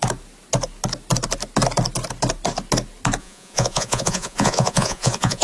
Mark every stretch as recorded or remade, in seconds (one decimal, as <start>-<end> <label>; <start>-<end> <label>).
0.0-3.2 recorded; 3.2-5.4 remade